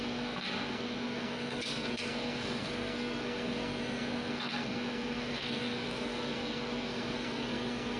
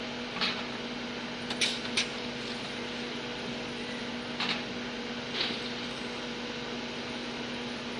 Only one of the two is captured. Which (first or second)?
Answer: second